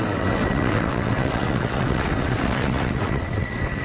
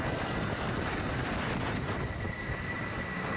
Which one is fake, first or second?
first